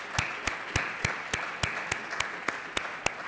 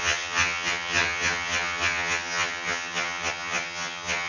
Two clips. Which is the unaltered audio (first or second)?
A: first